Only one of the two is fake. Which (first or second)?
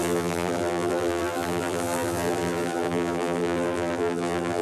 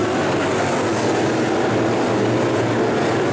first